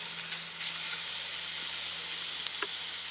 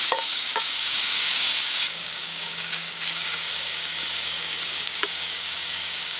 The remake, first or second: second